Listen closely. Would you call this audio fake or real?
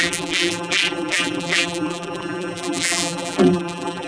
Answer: fake